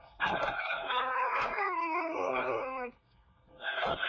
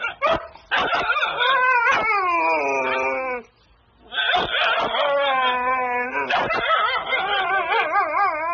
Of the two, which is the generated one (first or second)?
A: first